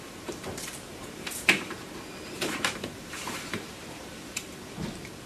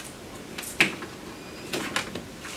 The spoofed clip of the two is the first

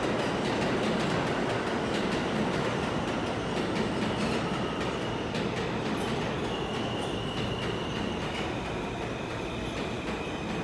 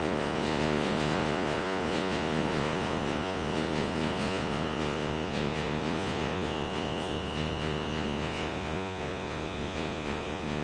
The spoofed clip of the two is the second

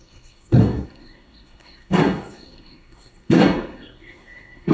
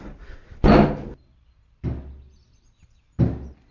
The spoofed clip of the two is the first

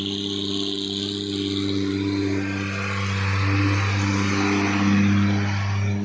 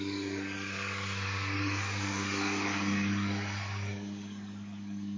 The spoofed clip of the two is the second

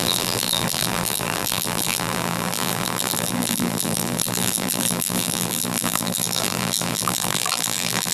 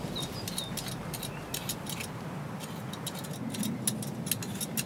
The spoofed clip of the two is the first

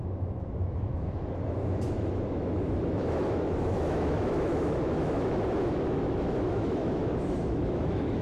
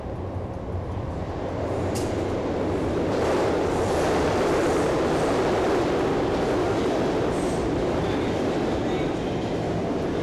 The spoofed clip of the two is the first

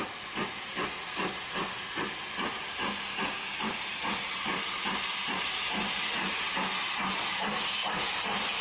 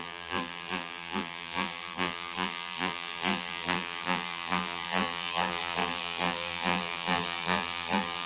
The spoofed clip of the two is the second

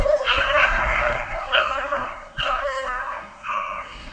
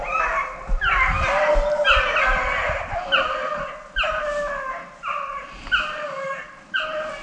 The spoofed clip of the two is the first